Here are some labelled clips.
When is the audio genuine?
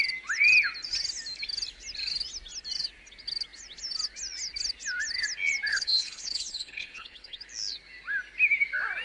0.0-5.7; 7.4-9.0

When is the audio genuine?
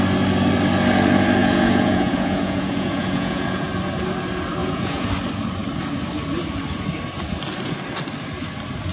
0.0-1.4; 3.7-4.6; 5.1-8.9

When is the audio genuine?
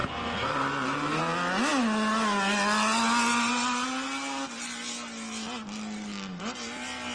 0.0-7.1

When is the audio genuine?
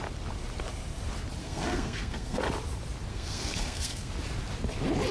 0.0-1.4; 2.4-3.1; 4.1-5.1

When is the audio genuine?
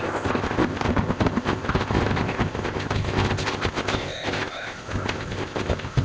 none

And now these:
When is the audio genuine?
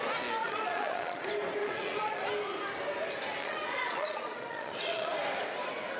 0.0-0.4; 1.2-1.6; 2.2-3.4; 5.1-6.0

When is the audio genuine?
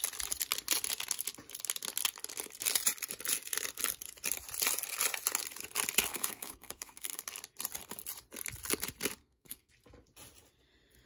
0.0-6.1; 7.2-9.2; 9.7-11.1